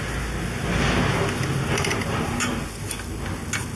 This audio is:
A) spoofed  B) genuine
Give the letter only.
B